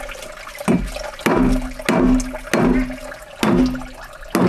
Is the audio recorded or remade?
recorded